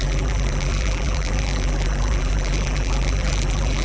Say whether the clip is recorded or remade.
remade